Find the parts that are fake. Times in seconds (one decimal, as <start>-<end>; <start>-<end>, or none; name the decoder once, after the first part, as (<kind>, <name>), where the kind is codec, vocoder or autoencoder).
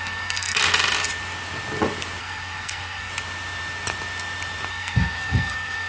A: 0.0-0.6 (codec, SNAC); 2.2-3.1; 4.7-5.9